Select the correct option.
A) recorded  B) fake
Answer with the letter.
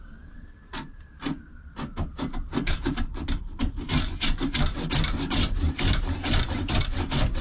B